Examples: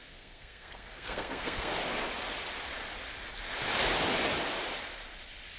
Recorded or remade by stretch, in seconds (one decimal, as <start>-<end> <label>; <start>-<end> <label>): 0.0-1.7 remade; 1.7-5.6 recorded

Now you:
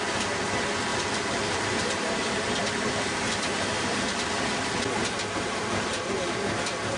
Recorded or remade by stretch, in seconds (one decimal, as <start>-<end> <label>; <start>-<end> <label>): 0.0-0.9 recorded; 0.9-4.5 remade; 4.5-5.0 recorded; 5.0-6.1 remade; 6.1-7.0 recorded

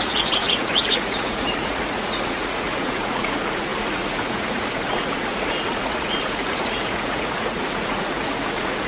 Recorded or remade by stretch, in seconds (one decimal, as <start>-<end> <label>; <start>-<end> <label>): 0.0-8.9 remade

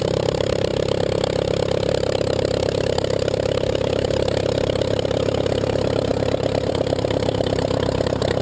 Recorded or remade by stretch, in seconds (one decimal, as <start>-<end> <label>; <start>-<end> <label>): 0.0-0.7 remade; 0.7-1.9 recorded; 1.9-8.4 remade

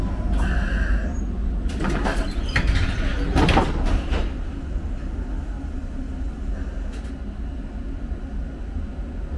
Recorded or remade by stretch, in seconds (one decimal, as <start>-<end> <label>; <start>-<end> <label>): 0.0-9.4 recorded